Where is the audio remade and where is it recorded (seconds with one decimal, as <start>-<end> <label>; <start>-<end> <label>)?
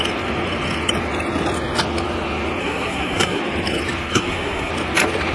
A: 0.0-2.6 recorded; 2.6-3.4 remade; 3.4-4.1 recorded; 4.1-4.7 remade; 4.7-5.3 recorded